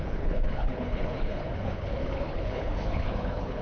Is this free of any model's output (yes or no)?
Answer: no